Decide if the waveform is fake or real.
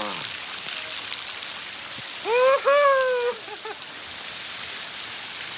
real